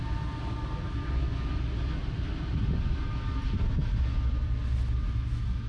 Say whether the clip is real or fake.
real